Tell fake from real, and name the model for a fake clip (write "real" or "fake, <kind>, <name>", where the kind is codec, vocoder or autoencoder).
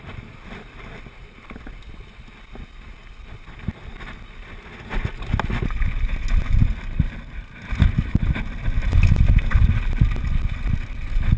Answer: real